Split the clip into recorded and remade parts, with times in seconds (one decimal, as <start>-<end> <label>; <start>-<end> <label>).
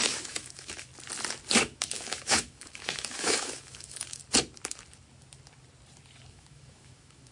0.0-0.9 remade; 0.9-1.6 recorded; 1.6-4.2 remade; 4.2-6.3 recorded; 6.3-7.3 remade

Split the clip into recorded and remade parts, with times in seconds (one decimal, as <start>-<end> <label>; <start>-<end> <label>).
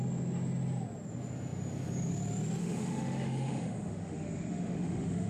0.0-2.6 recorded; 2.6-5.3 remade